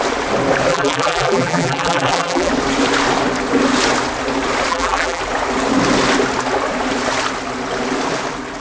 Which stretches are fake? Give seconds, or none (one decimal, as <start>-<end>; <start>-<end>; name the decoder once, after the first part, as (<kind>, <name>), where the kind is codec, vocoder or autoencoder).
0.7-2.5 (vocoder, BigVGAN v2); 4.7-5.2